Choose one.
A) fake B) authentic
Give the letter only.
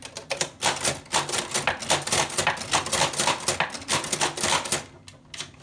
B